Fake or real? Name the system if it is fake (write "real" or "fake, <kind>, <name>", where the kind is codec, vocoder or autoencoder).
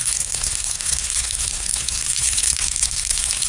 fake, codec, SNAC